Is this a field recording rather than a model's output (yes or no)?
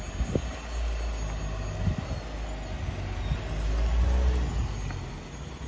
yes